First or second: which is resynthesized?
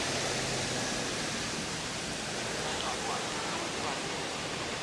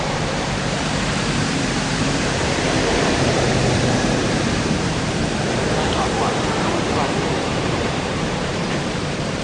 second